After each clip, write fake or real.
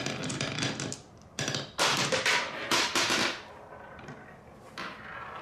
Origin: real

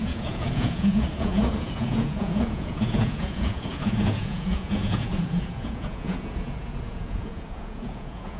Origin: fake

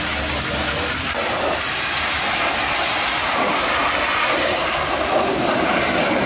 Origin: real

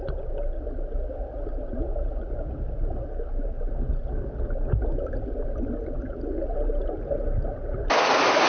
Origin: real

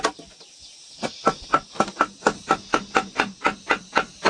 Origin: real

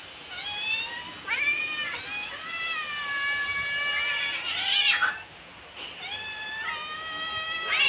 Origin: real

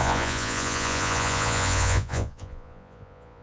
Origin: fake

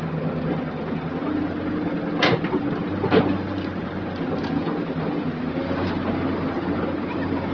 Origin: real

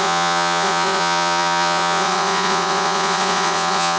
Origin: fake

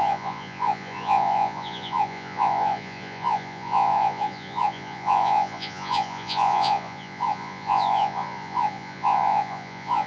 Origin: fake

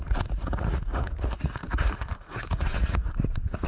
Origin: fake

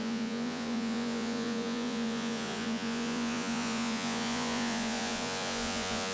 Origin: fake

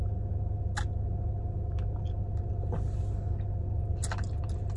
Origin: real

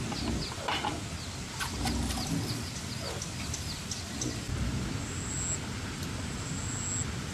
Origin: real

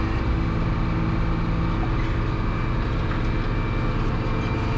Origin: real